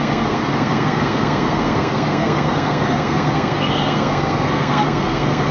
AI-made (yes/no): yes